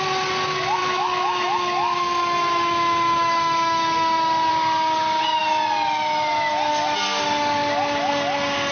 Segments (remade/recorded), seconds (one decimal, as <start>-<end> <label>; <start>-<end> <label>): 0.0-0.8 recorded; 0.8-4.5 remade; 4.5-8.7 recorded